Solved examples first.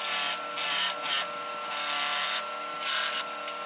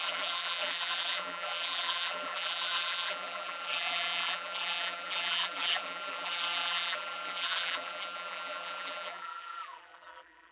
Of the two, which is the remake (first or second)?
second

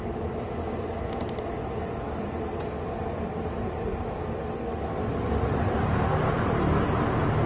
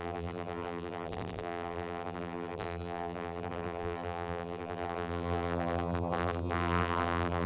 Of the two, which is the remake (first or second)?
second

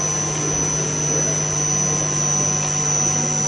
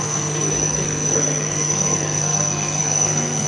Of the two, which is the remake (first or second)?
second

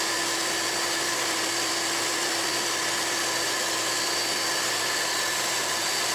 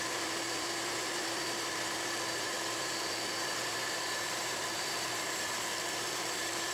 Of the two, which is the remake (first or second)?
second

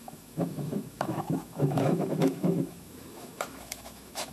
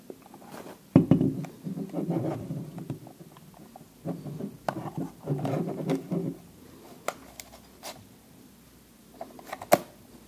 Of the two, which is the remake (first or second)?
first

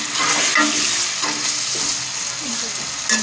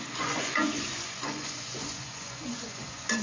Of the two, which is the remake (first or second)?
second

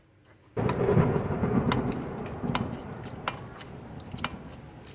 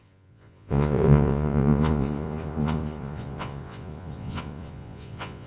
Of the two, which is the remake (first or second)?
second